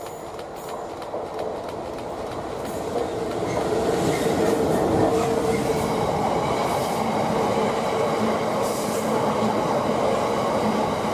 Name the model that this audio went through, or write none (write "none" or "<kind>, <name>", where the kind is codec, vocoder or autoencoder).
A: none